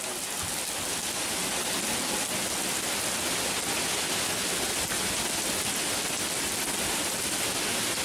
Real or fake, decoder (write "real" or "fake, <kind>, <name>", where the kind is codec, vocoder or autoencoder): real